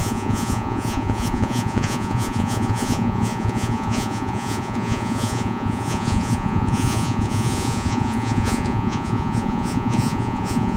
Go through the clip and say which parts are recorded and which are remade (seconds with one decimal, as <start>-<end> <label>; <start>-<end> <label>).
0.0-10.8 remade